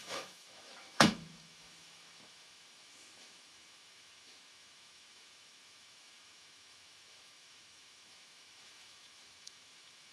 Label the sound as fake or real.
fake